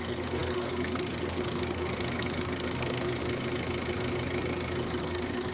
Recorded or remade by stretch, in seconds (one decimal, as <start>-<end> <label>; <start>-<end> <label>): 0.0-3.2 remade; 3.2-5.0 recorded; 5.0-5.5 remade